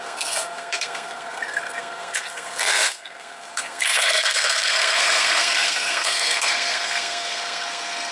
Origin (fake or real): fake